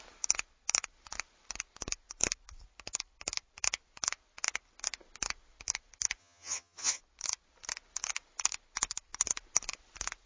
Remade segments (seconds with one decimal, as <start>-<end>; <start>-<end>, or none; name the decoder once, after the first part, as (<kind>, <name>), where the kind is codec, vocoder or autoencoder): 6.2-7.0 (vocoder, HiFi-GAN)